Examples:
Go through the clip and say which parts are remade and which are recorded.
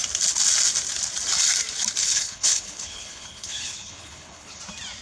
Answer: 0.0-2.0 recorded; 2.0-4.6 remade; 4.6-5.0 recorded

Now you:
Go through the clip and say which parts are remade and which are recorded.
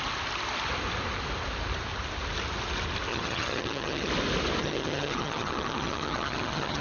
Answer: 0.0-3.1 recorded; 3.1-4.1 remade; 4.1-4.6 recorded; 4.6-6.8 remade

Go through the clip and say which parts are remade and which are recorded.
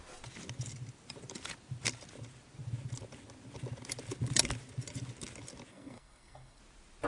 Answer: 0.0-5.7 recorded; 5.7-6.6 remade; 6.6-7.1 recorded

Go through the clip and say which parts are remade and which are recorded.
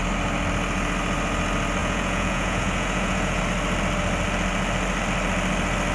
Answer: 0.0-1.8 recorded; 1.8-3.4 remade; 3.4-5.9 recorded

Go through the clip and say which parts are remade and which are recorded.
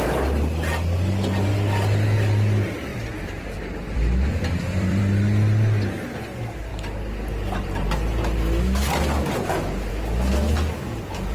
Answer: 0.0-2.9 recorded; 2.9-5.0 remade; 5.0-11.3 recorded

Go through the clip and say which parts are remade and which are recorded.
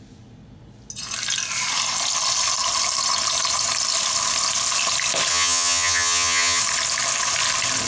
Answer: 0.0-5.3 recorded; 5.3-6.6 remade; 6.6-7.9 recorded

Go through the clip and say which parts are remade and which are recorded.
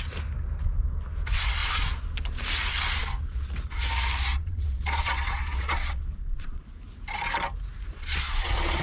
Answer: 0.0-4.3 recorded; 4.3-6.7 remade; 6.7-7.9 recorded; 7.9-8.8 remade